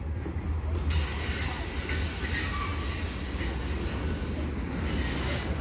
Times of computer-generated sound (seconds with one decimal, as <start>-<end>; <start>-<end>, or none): none

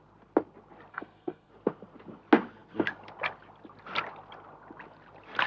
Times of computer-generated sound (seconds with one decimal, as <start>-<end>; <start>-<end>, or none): 0.9-1.5

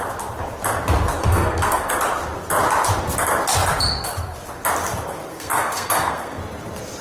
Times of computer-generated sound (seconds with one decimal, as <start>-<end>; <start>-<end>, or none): 1.2-1.9; 5.3-6.4